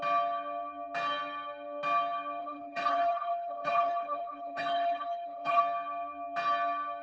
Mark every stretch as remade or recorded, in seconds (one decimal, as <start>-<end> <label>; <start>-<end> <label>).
0.0-2.4 recorded; 2.4-5.6 remade; 5.6-7.0 recorded